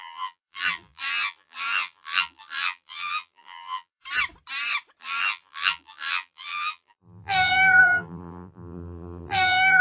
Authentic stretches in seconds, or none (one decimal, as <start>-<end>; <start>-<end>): 4.0-5.0